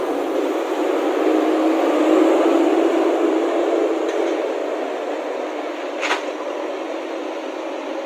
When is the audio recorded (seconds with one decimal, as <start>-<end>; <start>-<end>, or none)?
0.0-2.7; 3.4-8.1